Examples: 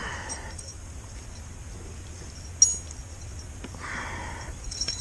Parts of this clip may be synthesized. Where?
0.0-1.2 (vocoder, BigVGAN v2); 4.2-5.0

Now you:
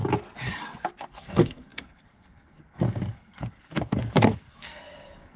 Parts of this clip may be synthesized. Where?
1.0-5.4 (codec, SNAC)